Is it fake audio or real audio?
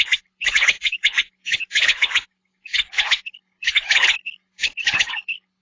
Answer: fake